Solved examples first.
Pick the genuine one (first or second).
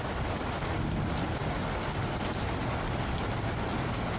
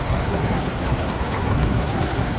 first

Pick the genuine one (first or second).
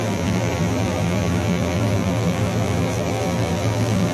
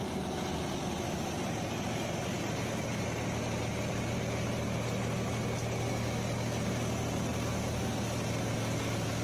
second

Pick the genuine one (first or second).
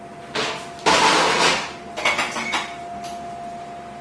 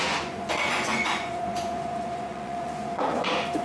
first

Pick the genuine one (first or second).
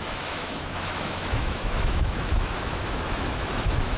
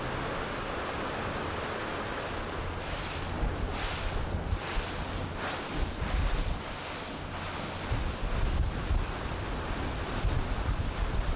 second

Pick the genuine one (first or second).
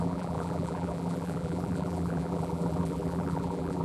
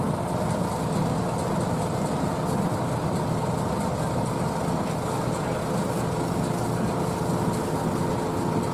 second